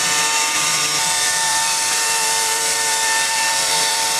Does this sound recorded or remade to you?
remade